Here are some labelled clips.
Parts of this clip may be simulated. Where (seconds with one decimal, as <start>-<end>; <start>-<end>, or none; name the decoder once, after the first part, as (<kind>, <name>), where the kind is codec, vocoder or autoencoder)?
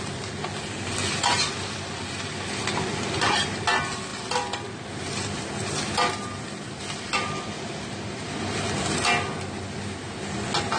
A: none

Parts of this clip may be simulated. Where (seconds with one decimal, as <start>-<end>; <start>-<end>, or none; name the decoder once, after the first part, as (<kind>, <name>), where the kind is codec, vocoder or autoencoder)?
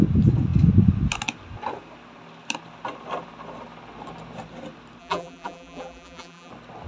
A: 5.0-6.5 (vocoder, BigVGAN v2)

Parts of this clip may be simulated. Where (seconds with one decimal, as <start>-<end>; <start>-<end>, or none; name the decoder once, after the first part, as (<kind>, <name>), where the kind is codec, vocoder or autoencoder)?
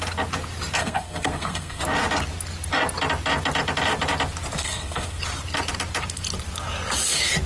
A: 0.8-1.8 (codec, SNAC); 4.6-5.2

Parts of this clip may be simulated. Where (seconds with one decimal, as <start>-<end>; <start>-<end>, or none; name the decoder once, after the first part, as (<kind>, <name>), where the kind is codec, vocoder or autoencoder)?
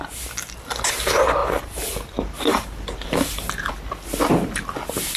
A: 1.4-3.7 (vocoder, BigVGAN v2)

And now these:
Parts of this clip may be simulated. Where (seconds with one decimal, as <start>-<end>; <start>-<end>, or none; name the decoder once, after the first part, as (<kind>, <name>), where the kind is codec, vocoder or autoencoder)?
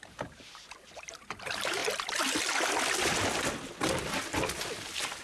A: 0.0-1.8 (vocoder, BigVGAN v2)